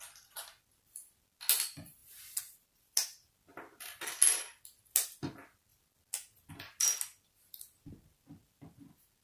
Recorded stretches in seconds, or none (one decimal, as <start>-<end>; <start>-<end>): 0.0-9.2